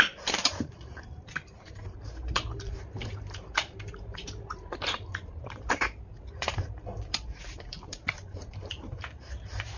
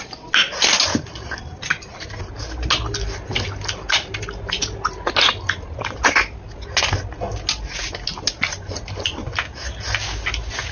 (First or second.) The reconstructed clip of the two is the first